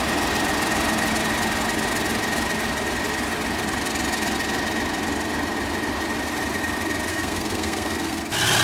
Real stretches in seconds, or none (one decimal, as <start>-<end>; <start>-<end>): 0.0-7.1; 8.2-8.6